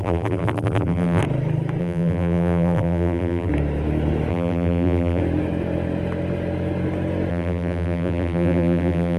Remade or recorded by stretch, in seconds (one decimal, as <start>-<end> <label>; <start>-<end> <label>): 0.0-1.2 remade; 1.2-1.8 recorded; 1.8-3.5 remade; 3.5-4.3 recorded; 4.3-5.2 remade; 5.2-7.3 recorded; 7.3-9.2 remade